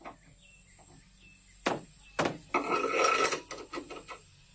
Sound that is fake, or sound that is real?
real